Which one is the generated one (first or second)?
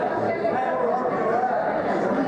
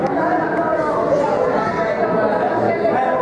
first